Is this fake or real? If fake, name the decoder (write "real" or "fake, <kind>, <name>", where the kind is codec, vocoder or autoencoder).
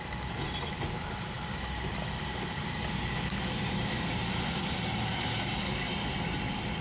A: real